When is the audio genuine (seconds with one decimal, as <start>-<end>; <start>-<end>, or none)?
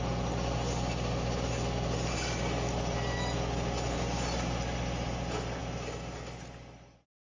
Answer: 0.0-7.2